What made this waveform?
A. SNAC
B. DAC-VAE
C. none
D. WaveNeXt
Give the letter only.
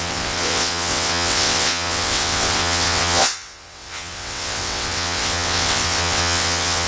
D